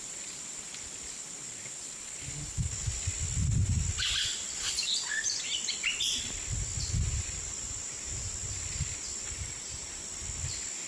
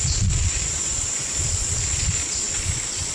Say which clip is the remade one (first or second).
second